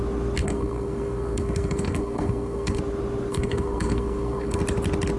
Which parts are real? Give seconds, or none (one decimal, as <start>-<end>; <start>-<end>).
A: 0.0-0.4; 2.8-3.3; 4.6-5.2